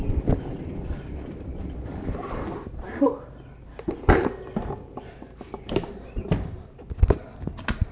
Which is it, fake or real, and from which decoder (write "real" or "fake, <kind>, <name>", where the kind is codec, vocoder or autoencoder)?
fake, vocoder, BigVGAN v2